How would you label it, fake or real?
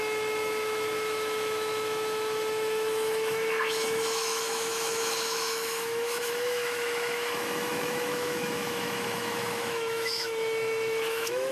fake